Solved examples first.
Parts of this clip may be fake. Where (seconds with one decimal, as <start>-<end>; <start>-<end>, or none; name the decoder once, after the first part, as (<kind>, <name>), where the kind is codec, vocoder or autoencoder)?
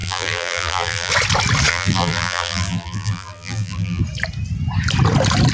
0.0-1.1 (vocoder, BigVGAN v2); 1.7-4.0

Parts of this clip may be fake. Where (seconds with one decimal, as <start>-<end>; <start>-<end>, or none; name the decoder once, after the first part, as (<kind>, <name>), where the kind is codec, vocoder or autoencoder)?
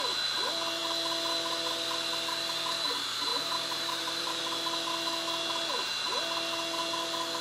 3.3-4.4 (vocoder, BigVGAN v2)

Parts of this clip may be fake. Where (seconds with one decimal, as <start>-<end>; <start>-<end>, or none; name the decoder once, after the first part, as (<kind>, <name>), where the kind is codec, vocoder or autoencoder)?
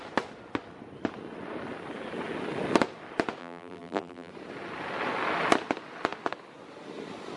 3.4-4.3 (vocoder, BigVGAN v2)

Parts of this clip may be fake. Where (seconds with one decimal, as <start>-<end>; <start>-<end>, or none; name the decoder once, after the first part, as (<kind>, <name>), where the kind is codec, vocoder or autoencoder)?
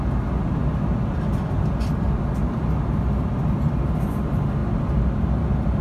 none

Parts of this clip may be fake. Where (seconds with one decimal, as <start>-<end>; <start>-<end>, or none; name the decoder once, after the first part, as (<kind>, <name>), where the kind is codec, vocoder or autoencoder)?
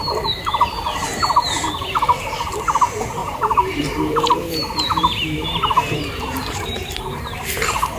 3.2-7.0 (vocoder, BigVGAN v2)